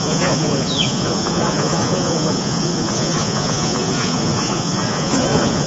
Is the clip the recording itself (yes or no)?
no